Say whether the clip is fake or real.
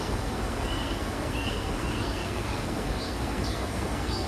fake